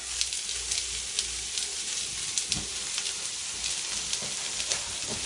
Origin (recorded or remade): recorded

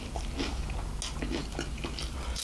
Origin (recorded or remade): recorded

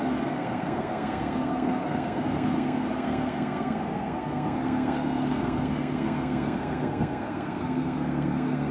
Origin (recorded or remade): remade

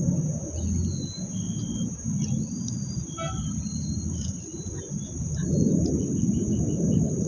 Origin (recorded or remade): recorded